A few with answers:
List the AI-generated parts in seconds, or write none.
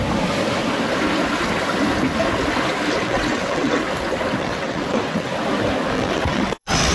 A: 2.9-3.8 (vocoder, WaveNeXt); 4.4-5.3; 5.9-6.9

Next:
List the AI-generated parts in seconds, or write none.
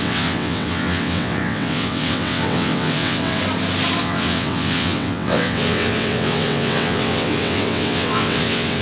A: 0.0-3.4 (vocoder, WaveNeXt); 4.0-8.8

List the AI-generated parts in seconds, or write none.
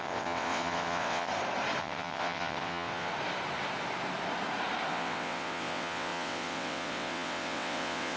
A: 0.0-1.3 (vocoder, WaveNeXt); 1.8-3.1; 4.9-8.2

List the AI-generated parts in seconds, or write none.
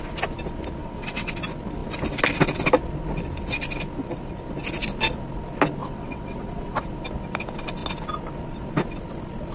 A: 0.8-1.3 (vocoder, WaveNeXt); 5.8-6.8